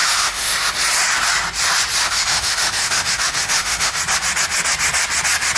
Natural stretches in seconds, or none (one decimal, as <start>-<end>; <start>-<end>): 0.7-2.0; 4.0-5.6